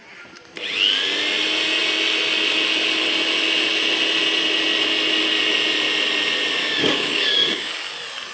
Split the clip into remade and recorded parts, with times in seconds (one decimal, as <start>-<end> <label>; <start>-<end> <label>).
0.0-6.6 recorded; 6.6-7.7 remade; 7.7-8.3 recorded